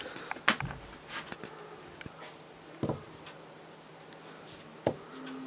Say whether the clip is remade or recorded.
recorded